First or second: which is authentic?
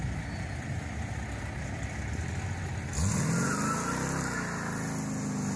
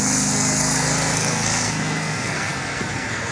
first